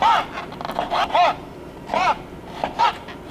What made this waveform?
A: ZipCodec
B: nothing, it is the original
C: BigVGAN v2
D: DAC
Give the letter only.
B